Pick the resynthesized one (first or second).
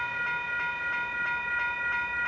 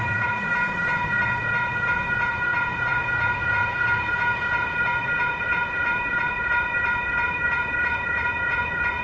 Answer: second